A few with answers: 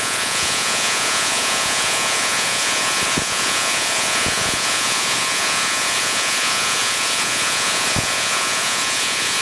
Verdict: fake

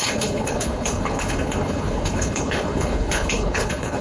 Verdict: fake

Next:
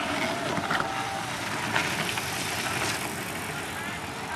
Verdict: real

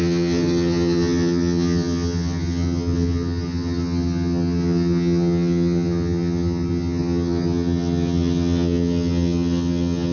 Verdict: fake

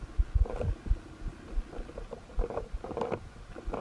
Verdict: real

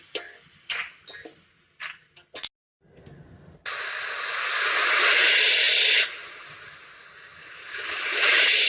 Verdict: real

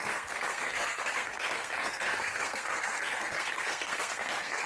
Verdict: fake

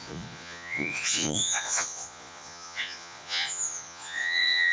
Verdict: fake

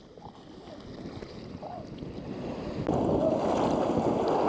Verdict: real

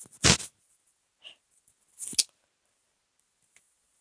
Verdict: real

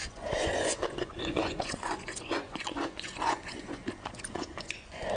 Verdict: fake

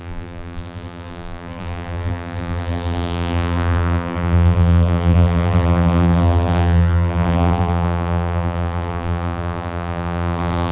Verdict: fake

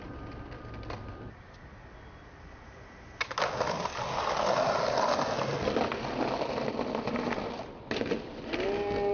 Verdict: real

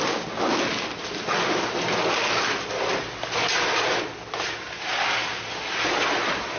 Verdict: real